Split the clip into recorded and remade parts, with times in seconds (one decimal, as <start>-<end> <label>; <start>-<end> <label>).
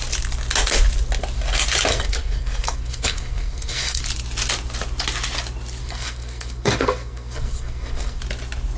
0.0-1.9 recorded; 1.9-4.0 remade; 4.0-5.8 recorded; 5.8-8.2 remade; 8.2-8.8 recorded